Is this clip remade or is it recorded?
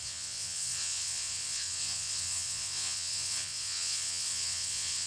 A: remade